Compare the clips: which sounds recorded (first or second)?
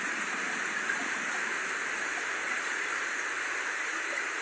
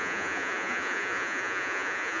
first